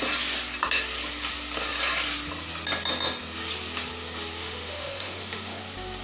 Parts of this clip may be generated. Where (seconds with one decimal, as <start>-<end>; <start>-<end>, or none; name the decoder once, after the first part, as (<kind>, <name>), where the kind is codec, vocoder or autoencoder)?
4.4-5.6 (autoencoder, DAC-VAE)